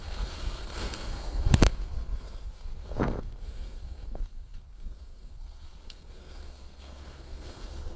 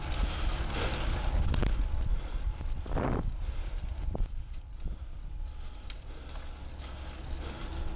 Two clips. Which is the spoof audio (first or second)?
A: first